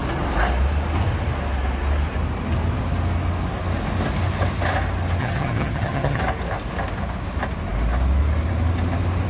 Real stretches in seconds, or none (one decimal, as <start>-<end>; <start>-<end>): 0.0-5.2; 6.2-9.3